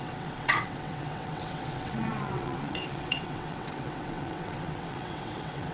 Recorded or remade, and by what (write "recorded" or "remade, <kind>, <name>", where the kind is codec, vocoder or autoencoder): remade, vocoder, WaveNeXt